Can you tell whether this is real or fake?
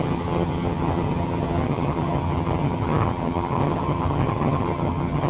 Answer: fake